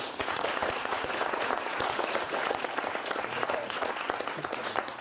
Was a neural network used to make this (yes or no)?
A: yes